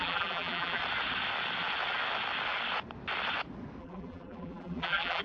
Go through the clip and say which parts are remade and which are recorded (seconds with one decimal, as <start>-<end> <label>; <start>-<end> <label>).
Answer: 0.0-0.8 remade; 0.8-3.8 recorded; 3.8-5.2 remade